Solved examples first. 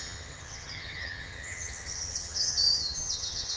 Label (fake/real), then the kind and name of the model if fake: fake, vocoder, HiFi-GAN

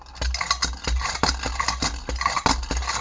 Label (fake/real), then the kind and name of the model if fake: real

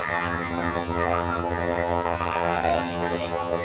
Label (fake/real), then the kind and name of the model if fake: fake, vocoder, HiFi-GAN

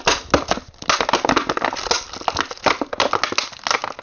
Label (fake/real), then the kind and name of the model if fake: real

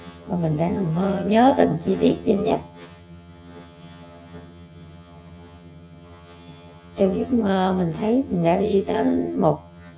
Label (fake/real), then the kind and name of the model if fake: fake, vocoder, HiFi-GAN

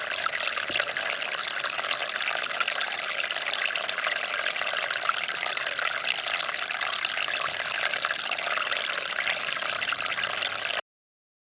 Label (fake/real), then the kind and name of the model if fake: real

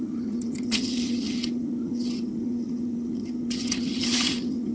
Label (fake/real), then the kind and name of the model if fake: fake, vocoder, HiFi-GAN